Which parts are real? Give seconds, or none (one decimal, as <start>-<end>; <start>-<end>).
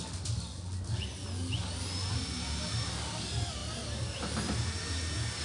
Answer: 0.0-5.4